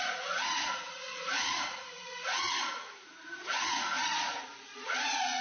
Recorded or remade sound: remade